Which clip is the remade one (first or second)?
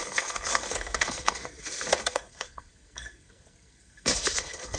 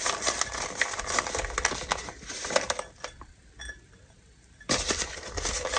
first